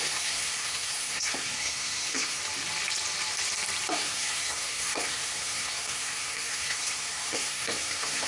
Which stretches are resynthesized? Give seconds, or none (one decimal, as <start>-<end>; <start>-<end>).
0.0-2.4; 3.9-8.3